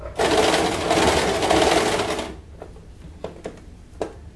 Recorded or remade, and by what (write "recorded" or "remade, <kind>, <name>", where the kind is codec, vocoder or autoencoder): recorded